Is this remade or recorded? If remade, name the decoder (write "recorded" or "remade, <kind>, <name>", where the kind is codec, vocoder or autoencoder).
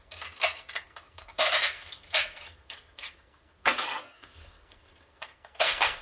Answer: remade, codec, SNAC